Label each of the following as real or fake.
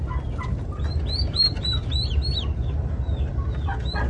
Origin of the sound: real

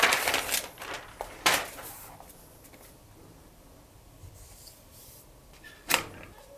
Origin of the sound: fake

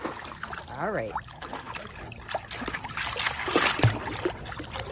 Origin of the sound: real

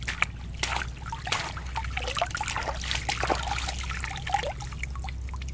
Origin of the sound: real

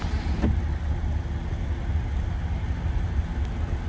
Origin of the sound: real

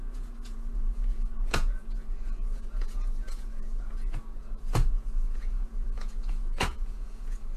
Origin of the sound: fake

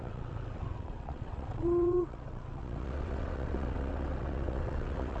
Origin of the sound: fake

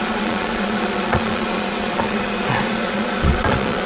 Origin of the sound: fake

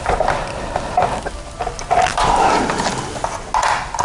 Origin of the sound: real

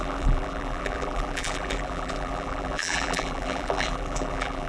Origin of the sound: fake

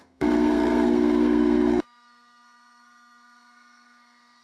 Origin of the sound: fake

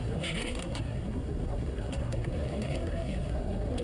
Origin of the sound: fake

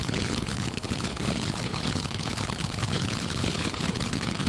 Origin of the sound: fake